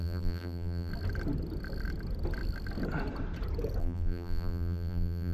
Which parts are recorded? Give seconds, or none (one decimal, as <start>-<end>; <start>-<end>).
0.9-3.8